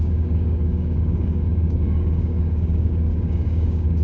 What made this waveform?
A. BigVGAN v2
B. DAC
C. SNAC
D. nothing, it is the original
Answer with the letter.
B